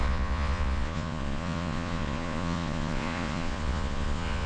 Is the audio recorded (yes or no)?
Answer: no